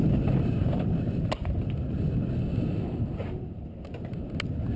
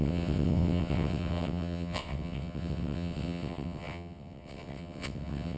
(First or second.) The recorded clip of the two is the first